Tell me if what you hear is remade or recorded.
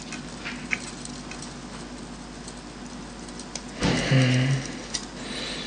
recorded